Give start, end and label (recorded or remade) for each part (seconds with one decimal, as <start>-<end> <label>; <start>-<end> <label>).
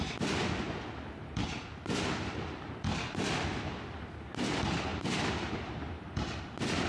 0.0-1.4 recorded; 1.4-2.4 remade; 2.4-4.9 recorded; 4.9-6.4 remade; 6.4-6.9 recorded